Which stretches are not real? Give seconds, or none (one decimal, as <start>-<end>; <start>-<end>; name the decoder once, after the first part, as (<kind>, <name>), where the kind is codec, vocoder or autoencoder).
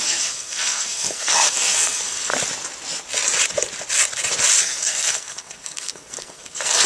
0.0-2.3 (codec, SNAC); 4.6-6.9